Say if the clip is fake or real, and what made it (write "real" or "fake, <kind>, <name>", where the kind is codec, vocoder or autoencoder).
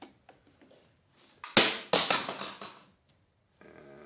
real